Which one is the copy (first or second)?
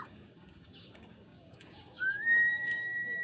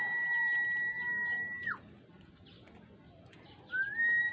first